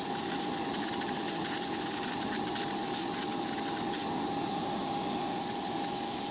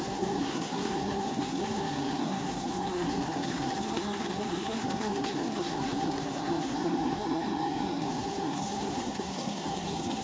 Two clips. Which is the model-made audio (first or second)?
second